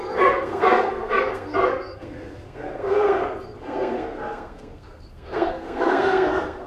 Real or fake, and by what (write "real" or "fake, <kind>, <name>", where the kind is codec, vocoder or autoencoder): fake, codec, SNAC